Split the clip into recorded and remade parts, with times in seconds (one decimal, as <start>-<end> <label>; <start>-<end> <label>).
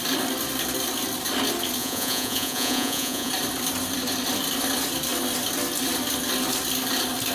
0.0-1.8 recorded; 1.8-3.3 remade; 3.3-7.3 recorded